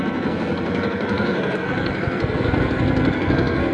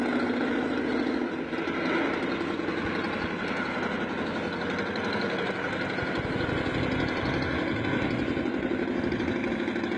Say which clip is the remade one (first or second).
first